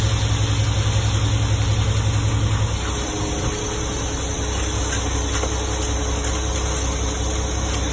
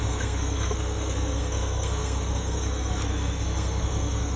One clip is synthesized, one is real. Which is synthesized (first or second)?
second